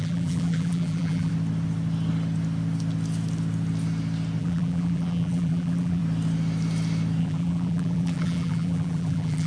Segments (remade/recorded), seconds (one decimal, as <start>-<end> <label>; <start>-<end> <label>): 0.0-1.3 remade; 1.3-4.4 recorded; 4.4-6.0 remade; 6.0-7.2 recorded; 7.2-9.5 remade